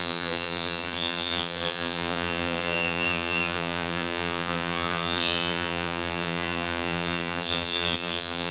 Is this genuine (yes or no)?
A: no